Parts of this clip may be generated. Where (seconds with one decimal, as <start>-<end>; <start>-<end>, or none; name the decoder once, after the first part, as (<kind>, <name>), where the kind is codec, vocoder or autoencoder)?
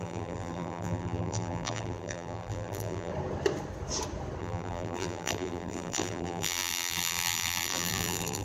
0.0-3.1 (vocoder, BigVGAN v2); 4.4-8.4